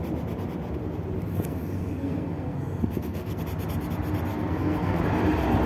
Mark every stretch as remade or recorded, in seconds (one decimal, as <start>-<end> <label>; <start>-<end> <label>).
0.0-1.3 recorded; 1.3-3.4 remade; 3.4-4.3 recorded; 4.3-5.0 remade; 5.0-5.7 recorded